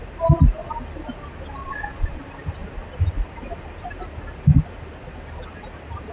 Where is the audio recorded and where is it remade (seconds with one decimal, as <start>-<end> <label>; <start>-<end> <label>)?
0.0-1.6 recorded; 1.6-2.2 remade; 2.2-6.1 recorded